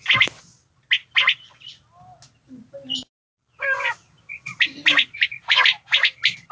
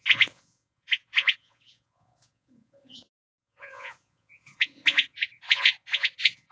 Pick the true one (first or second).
first